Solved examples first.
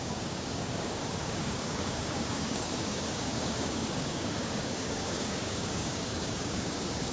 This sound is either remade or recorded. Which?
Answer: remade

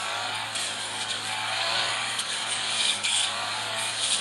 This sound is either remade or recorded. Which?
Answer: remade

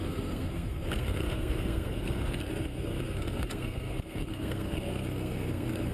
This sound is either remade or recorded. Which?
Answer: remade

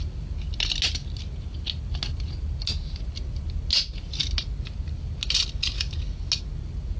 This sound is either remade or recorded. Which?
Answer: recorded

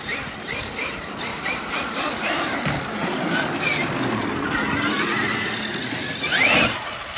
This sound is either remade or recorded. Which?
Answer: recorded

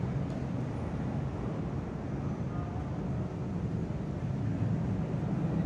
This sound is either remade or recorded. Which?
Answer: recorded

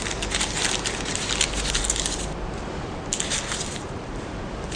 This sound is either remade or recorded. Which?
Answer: recorded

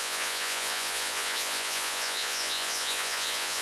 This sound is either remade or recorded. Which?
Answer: remade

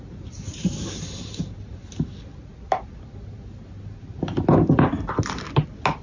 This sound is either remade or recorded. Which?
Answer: recorded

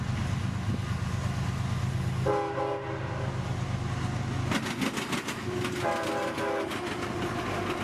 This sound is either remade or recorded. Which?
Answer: recorded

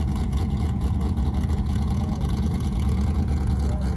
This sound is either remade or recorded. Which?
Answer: remade